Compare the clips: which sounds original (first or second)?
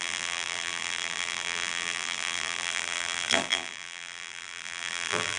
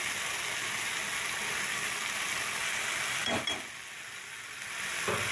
second